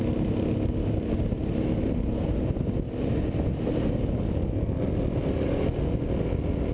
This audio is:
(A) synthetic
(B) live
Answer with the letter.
B